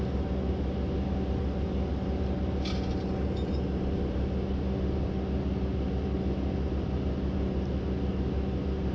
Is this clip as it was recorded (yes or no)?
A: yes